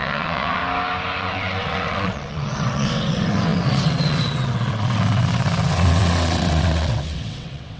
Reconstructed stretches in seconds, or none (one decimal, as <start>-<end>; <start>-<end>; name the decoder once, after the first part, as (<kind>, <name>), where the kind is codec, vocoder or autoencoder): 0.0-0.6 (vocoder, WaveNeXt); 1.2-7.8